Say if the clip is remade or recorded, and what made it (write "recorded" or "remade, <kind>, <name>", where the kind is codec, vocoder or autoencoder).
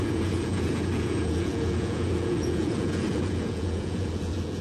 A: remade, vocoder, Vocos